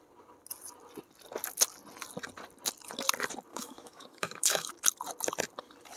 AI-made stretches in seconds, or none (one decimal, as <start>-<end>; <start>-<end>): 3.5-4.7